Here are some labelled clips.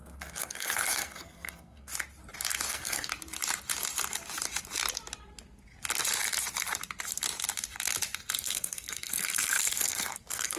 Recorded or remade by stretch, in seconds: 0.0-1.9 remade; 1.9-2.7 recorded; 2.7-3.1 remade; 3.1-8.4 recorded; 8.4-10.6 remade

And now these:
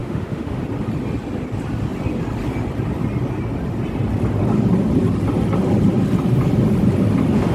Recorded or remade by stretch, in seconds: 0.0-0.6 remade; 0.6-7.5 recorded